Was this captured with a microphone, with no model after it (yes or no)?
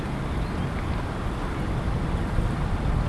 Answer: yes